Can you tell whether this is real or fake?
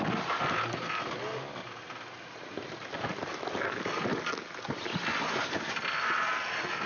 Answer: real